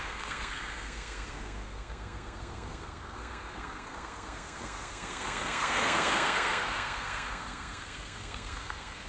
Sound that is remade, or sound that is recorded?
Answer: remade